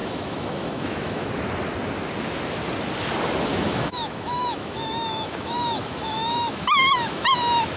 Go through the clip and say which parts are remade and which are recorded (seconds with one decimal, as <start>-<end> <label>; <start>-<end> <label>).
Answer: 0.0-1.3 remade; 1.3-3.5 recorded; 3.5-7.3 remade; 7.3-7.8 recorded